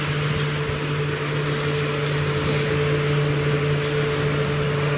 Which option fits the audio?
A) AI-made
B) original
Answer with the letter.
B